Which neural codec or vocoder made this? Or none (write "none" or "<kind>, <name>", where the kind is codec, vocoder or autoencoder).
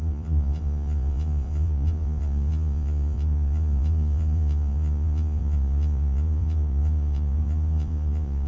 vocoder, Vocos